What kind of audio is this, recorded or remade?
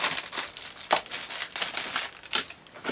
recorded